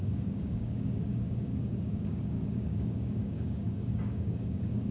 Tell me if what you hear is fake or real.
fake